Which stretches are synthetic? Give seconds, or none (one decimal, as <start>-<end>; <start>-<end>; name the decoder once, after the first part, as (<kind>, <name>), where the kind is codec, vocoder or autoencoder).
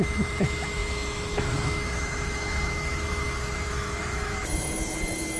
0.0-5.4 (autoencoder, DAC-VAE)